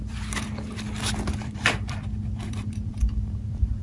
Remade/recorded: remade